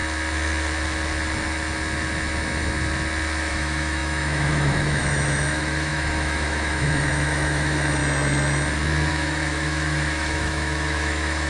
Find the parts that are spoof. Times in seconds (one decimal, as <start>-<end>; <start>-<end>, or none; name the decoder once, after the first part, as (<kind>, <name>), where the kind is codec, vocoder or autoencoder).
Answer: 3.5-8.0 (autoencoder, DAC-VAE); 9.1-11.5